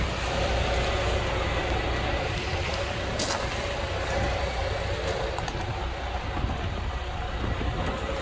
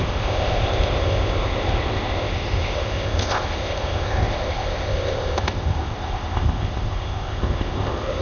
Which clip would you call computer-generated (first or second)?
second